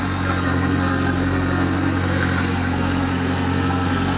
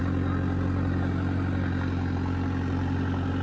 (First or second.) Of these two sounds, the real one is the second